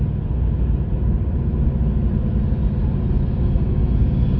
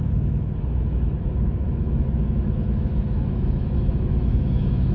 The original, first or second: first